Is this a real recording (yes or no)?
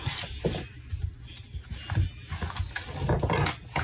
yes